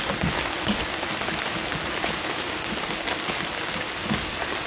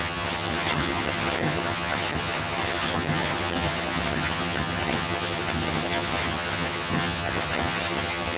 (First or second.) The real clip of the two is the first